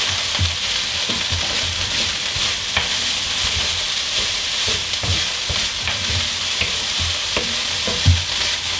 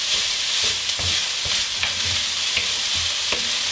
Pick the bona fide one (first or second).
second